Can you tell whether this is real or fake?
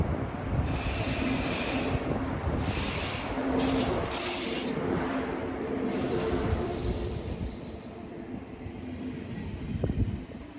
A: fake